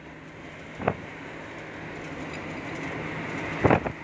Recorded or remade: recorded